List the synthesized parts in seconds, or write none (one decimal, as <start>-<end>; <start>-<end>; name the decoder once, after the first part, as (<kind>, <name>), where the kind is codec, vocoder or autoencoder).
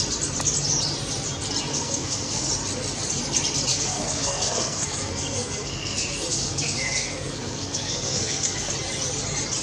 1.7-2.5 (codec, SNAC); 3.7-8.7